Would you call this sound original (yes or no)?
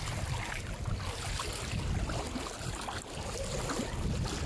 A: yes